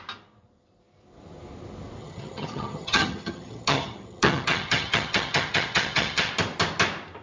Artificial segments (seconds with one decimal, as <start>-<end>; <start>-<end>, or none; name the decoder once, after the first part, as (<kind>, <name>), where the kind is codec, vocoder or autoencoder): 2.0-6.3 (vocoder, HiFi-GAN)